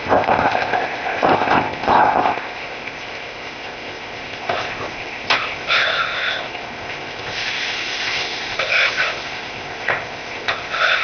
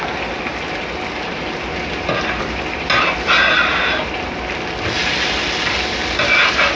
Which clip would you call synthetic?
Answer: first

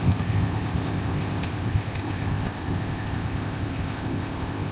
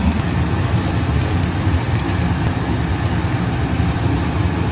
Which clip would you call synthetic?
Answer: first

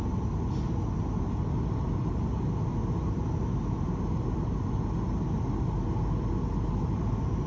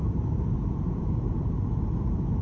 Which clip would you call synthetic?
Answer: second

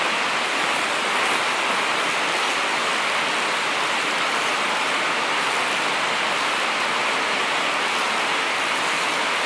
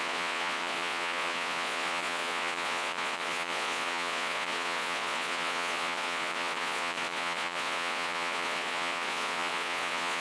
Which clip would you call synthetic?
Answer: second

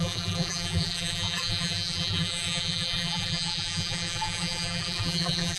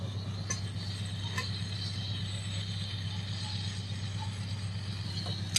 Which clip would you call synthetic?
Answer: first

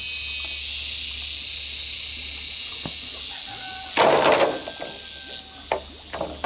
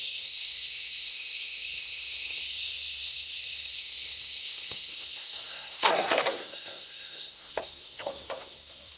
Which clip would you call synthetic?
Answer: second